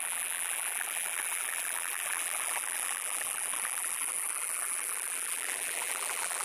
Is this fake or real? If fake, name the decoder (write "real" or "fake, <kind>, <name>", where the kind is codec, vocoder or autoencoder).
fake, vocoder, BigVGAN v2